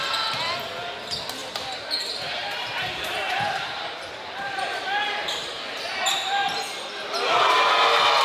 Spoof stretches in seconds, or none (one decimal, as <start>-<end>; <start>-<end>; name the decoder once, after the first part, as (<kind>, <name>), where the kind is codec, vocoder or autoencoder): 2.4-6.9 (vocoder, BigVGAN v2)